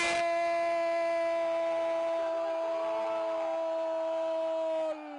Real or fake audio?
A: real